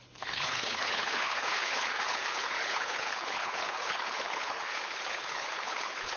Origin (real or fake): fake